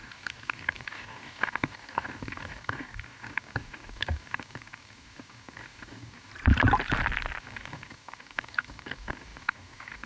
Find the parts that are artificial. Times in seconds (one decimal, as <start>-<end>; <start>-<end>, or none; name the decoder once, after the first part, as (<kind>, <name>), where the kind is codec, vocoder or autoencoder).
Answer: 0.0-6.3 (codec, DAC); 7.4-10.1